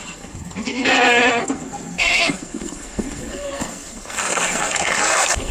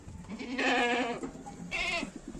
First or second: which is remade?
first